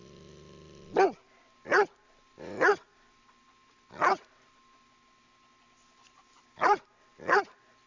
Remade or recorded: recorded